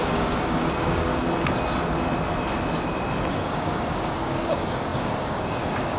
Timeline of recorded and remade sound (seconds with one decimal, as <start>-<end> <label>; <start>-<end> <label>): 0.0-1.1 remade; 1.1-3.3 recorded; 3.3-6.0 remade